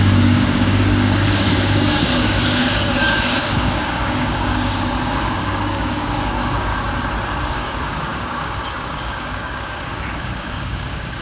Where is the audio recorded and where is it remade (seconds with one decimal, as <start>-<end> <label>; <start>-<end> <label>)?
0.0-6.7 remade; 6.7-7.5 recorded; 7.5-11.2 remade